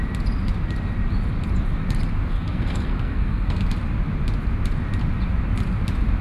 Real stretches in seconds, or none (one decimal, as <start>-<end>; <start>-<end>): 0.0-2.3; 3.6-6.2